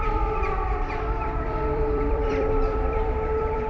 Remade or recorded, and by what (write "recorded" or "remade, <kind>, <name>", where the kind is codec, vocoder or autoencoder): remade, vocoder, BigVGAN v2